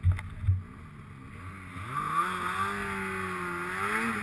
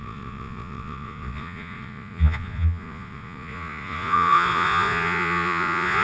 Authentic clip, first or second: first